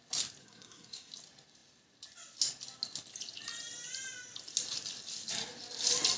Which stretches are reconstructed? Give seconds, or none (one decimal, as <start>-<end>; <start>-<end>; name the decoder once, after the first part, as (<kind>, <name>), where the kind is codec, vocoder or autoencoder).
0.4-1.1 (codec, SNAC)